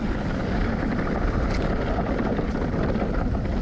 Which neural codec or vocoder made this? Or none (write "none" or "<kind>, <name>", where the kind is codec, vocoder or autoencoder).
none